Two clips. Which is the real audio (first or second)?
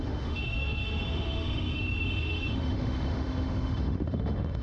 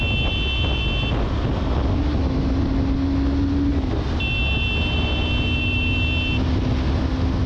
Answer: second